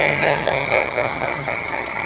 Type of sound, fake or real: fake